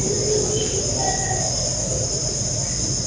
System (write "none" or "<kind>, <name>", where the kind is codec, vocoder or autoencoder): none